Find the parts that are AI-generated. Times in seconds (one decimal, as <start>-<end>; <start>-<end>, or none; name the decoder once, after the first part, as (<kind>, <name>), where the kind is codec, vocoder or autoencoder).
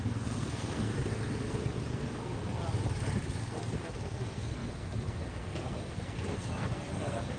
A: 0.0-2.6 (codec, SNAC); 3.4-7.4